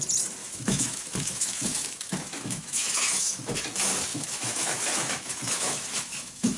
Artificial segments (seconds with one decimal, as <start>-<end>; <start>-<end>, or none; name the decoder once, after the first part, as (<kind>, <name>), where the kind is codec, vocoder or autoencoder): 0.4-3.6 (autoencoder, DAC-VAE); 4.1-6.6